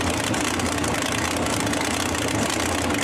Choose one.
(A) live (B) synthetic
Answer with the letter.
A